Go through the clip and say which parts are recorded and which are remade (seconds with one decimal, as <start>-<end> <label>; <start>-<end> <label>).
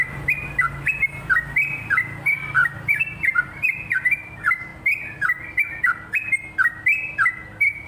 0.0-2.6 recorded; 2.6-3.9 remade; 3.9-7.9 recorded